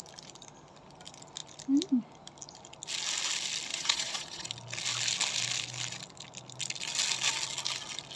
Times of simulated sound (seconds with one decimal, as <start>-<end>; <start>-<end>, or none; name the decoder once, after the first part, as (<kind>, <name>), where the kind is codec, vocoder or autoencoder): 3.7-4.5 (vocoder, Vocos)